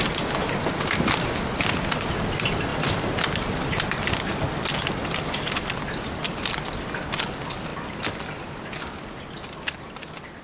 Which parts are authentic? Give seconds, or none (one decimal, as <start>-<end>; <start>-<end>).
0.0-10.4